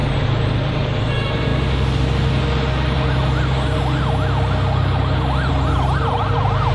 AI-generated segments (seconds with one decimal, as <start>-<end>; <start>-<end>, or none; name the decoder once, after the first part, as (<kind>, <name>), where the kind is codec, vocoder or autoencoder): 0.0-1.5 (vocoder, BigVGAN v2); 5.5-6.7